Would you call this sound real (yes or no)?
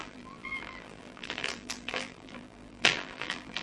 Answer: no